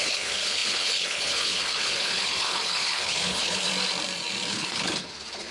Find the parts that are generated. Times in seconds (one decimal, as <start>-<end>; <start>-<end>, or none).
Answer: 0.0-3.7; 4.5-5.5